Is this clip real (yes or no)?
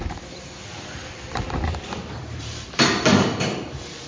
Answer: no